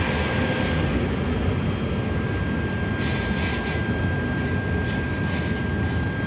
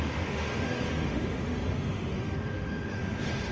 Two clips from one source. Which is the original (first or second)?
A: first